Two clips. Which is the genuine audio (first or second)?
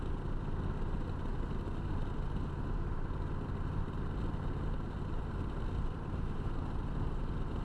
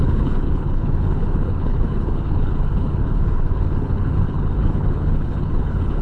first